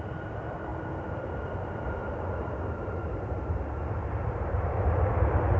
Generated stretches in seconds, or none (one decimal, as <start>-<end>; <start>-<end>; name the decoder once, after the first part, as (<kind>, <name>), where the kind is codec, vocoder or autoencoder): 2.0-5.0 (vocoder, BigVGAN v2)